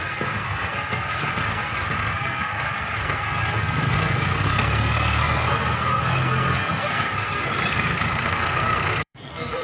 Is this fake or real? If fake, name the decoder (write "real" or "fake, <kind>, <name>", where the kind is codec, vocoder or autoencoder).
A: fake, codec, SNAC